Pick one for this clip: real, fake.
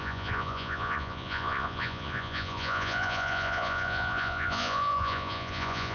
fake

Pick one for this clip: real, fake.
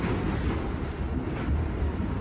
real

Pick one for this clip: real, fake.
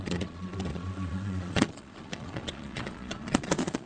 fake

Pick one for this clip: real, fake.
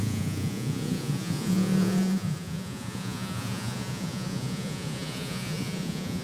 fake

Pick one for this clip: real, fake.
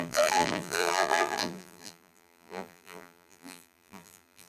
fake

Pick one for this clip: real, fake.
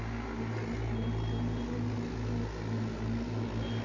real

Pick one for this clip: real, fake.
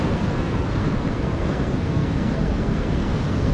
fake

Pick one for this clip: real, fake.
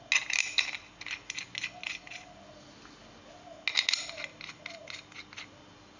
real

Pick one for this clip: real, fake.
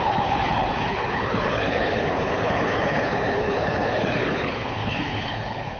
fake